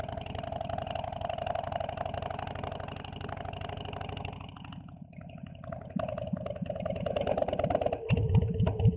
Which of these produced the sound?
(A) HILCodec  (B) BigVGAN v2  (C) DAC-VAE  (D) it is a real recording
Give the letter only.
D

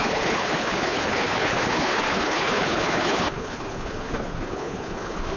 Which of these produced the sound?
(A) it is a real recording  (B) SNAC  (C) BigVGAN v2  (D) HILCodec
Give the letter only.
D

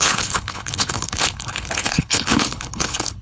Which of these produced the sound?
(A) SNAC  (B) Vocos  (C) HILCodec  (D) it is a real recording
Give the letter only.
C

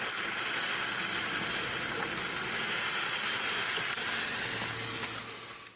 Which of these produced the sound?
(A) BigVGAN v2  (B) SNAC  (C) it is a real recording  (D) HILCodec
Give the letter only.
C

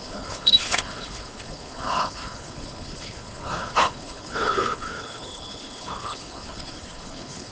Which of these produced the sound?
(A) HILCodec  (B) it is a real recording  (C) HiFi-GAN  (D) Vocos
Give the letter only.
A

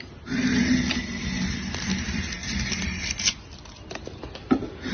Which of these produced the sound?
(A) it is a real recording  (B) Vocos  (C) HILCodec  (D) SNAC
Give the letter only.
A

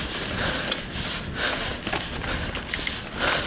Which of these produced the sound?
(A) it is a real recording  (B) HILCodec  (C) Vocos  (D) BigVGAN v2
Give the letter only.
A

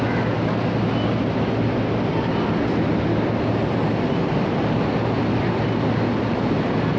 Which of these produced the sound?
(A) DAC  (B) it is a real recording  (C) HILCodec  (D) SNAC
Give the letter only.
B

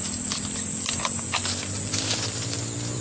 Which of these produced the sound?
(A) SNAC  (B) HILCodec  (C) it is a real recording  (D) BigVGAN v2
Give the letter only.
C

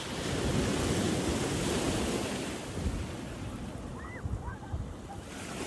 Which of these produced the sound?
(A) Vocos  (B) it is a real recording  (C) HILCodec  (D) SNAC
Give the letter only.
B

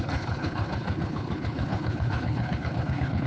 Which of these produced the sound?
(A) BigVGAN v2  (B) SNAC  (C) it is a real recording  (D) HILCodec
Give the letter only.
D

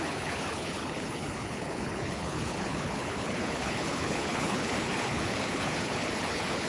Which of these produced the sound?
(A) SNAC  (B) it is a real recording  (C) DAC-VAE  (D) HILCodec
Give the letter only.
D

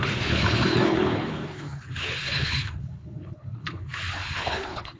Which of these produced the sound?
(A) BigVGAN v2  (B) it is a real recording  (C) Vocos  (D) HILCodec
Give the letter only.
D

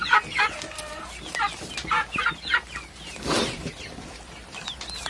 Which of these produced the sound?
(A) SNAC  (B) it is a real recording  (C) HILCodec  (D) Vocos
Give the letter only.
B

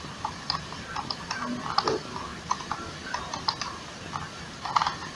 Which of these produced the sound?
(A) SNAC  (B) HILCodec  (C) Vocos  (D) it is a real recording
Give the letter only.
D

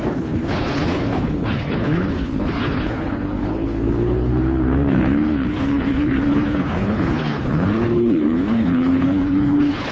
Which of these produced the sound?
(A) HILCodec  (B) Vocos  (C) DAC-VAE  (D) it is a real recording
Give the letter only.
A